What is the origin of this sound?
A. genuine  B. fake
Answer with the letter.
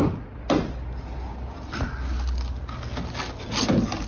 A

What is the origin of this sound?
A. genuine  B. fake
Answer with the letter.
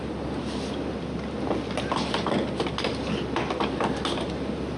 A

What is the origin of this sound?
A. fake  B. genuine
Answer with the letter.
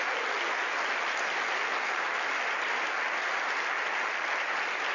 B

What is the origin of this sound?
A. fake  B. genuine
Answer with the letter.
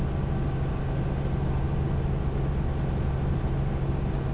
B